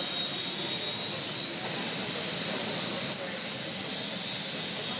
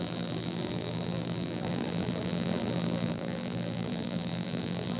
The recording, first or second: first